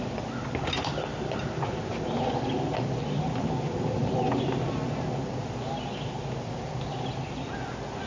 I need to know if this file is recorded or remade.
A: recorded